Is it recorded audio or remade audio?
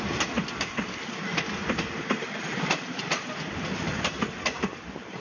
recorded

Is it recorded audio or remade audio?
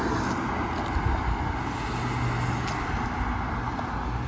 recorded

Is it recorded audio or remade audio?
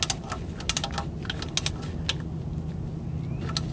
recorded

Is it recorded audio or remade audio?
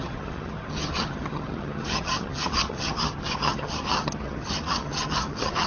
remade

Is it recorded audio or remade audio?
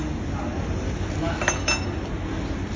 recorded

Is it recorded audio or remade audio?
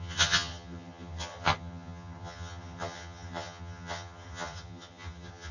remade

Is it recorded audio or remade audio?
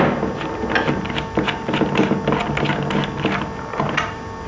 recorded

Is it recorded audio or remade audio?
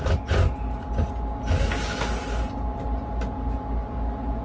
recorded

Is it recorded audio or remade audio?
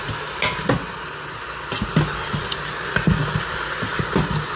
recorded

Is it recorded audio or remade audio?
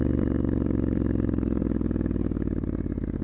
recorded